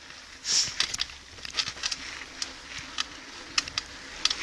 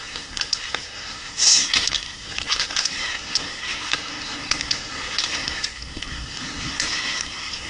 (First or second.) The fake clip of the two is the second